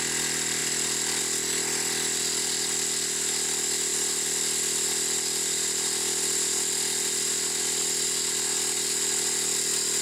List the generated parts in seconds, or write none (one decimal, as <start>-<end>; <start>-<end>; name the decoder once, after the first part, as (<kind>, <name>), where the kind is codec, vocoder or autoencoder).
none